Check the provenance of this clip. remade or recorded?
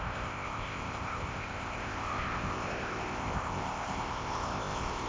remade